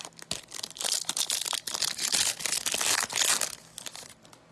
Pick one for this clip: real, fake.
real